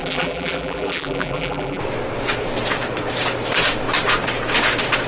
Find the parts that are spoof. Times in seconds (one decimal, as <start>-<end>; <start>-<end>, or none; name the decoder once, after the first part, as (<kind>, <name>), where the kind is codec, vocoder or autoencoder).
0.0-1.8 (vocoder, BigVGAN v2)